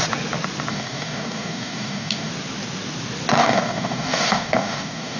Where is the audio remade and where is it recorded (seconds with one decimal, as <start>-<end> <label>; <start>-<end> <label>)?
0.0-0.7 recorded; 0.7-2.3 remade; 2.3-3.4 recorded; 3.4-5.2 remade